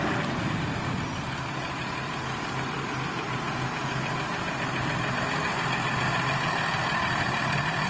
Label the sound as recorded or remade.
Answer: remade